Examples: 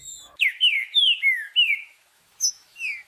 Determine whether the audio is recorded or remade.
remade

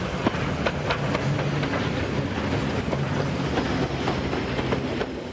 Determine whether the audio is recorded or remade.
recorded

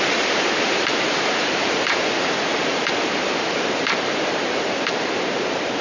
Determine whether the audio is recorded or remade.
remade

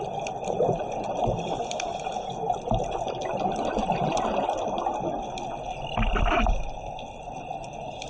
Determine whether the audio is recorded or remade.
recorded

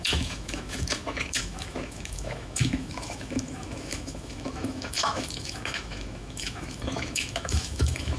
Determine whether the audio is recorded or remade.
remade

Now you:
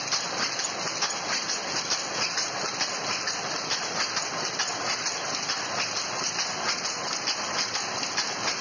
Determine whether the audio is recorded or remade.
recorded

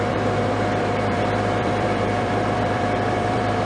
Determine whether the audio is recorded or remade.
remade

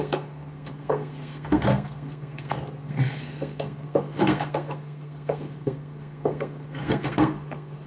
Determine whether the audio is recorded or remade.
remade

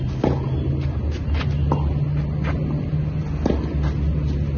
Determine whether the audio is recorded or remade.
recorded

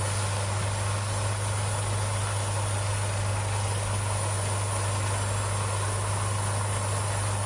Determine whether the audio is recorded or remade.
recorded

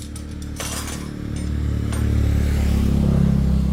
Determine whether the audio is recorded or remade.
recorded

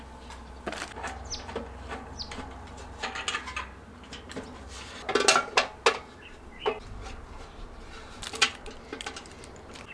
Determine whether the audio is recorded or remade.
recorded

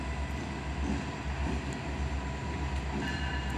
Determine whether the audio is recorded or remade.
recorded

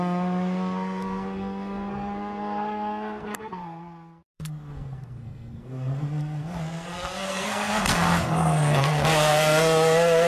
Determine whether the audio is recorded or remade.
remade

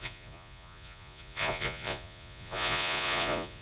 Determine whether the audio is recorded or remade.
remade